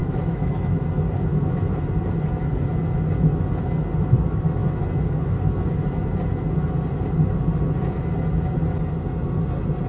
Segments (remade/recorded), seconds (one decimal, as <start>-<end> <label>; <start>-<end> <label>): 0.0-0.8 remade; 0.8-9.9 recorded